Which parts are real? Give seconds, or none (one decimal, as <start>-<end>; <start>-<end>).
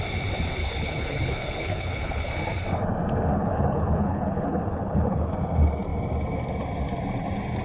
0.0-0.6; 2.3-3.3; 5.3-7.6